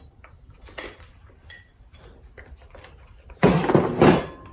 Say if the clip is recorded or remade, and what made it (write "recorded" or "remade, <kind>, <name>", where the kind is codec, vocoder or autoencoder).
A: remade, vocoder, BigVGAN v2